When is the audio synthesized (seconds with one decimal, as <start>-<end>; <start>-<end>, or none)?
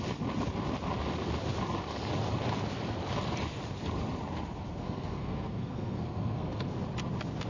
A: 4.7-6.8